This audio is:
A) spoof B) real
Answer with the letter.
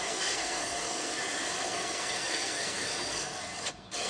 A